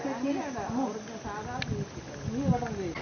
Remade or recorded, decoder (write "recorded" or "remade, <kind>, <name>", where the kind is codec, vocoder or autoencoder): recorded